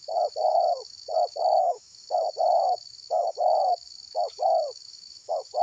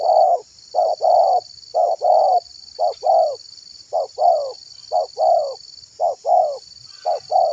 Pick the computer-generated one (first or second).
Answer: first